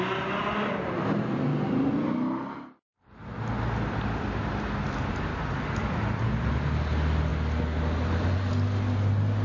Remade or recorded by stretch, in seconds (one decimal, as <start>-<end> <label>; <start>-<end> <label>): 0.0-9.4 recorded